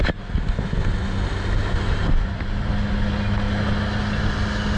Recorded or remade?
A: recorded